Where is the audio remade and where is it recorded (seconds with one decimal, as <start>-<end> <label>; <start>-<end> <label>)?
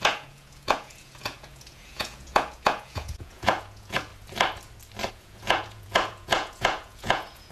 0.0-4.1 remade; 4.1-5.1 recorded; 5.1-7.5 remade